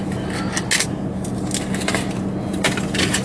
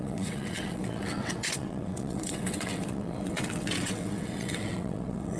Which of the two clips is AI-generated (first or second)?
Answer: second